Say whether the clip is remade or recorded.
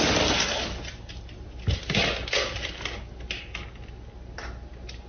recorded